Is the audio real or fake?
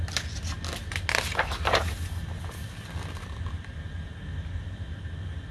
real